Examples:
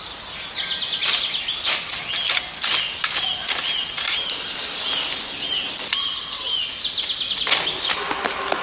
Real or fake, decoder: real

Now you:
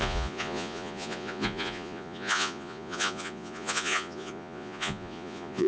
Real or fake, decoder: fake, vocoder, Vocos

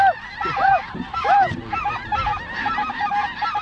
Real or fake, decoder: fake, vocoder, BigVGAN v2